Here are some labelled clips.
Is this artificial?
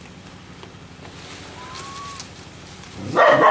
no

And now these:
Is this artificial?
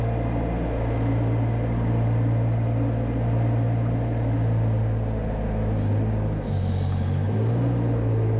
no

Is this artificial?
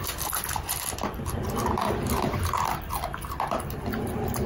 no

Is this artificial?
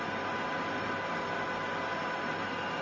yes